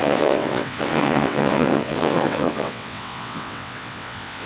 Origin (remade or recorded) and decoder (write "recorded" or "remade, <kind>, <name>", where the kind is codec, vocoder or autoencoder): remade, vocoder, WaveNeXt